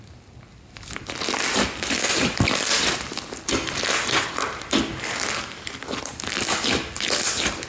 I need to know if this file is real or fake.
real